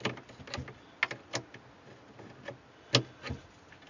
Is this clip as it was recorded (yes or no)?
yes